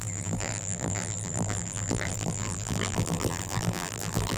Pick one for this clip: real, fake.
fake